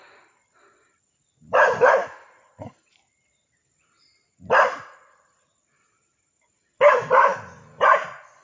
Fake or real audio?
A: fake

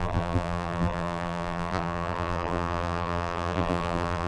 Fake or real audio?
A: fake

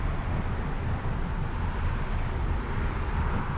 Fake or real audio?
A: fake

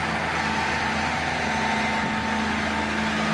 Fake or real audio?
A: real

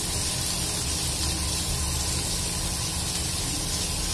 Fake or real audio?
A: real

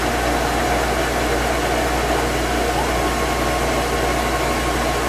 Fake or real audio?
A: real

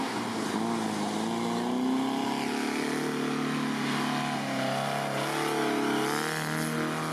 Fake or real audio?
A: real